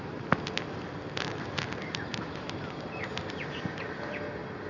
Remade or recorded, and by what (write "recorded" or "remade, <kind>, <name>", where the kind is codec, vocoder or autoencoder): recorded